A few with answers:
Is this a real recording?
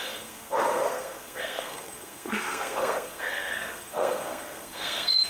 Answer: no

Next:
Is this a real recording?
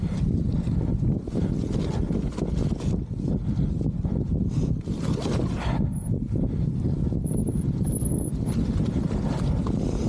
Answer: yes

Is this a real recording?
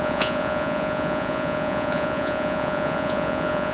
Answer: no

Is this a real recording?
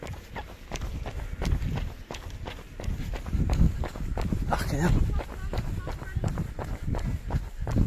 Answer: yes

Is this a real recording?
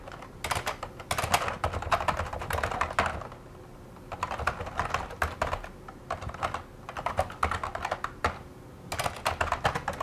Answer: yes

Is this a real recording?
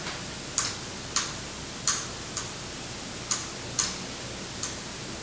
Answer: yes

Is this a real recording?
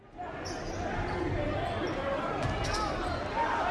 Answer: yes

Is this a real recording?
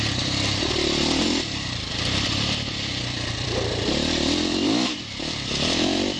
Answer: no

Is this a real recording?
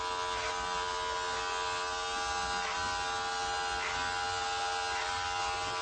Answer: yes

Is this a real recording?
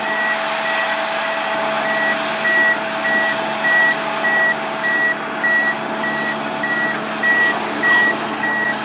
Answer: yes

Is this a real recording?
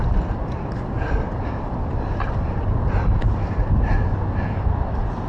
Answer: no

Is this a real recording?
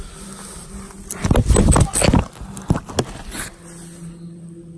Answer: yes